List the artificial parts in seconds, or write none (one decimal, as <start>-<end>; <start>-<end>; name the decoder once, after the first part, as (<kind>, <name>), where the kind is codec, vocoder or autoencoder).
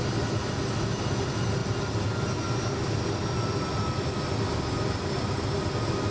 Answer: none